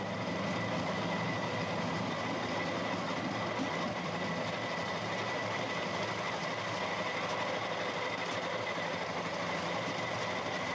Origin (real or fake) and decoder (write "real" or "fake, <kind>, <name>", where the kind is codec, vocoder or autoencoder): real